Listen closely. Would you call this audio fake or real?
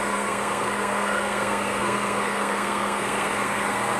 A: fake